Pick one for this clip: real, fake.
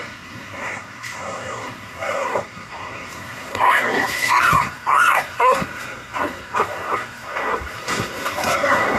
fake